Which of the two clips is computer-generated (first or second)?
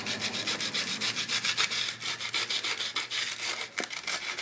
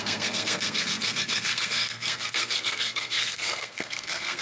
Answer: second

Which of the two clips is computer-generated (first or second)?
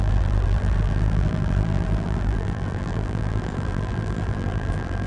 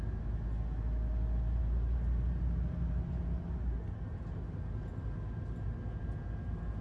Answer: first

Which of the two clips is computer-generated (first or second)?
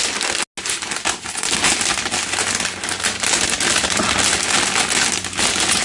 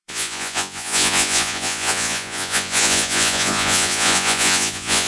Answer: second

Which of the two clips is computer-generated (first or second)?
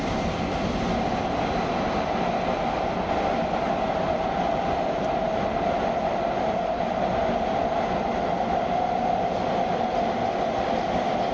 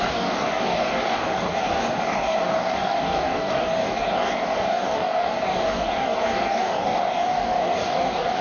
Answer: second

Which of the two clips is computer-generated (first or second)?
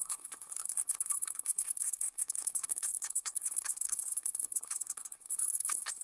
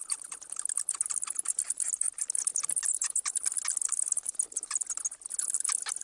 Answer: first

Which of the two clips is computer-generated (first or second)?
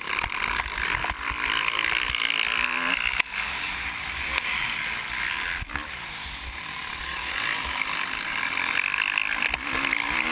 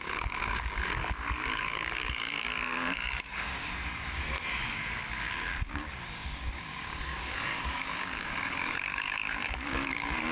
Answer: second